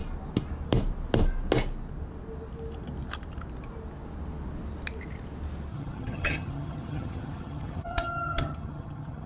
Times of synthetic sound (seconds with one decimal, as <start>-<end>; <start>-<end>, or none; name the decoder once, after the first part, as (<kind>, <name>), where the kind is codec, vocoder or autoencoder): 5.7-9.3 (vocoder, HiFi-GAN)